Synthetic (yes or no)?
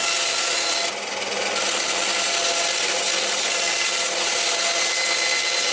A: no